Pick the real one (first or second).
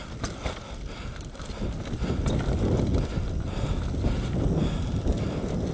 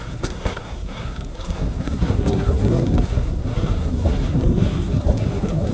first